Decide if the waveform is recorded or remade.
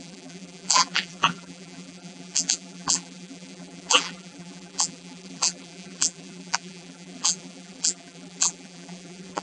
remade